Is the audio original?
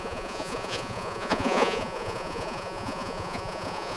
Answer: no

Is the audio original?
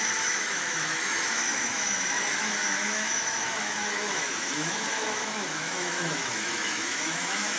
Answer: no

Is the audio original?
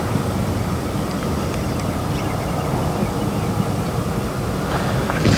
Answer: yes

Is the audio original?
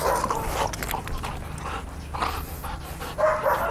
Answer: yes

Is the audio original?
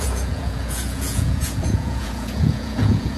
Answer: no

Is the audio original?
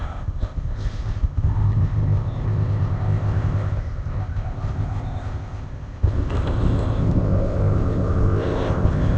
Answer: no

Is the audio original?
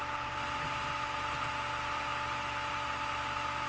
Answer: yes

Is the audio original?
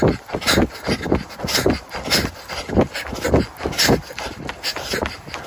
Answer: yes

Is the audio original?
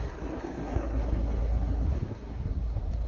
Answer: no